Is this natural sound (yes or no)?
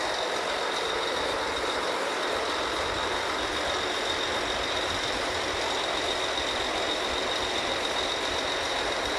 yes